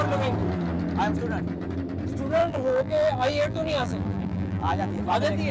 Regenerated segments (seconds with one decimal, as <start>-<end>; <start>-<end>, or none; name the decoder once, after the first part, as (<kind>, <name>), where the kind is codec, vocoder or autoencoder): 2.4-5.0 (vocoder, BigVGAN v2)